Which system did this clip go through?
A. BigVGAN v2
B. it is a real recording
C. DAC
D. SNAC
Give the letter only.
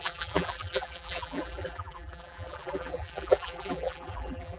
A